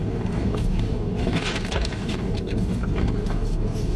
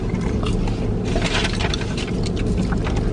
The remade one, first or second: first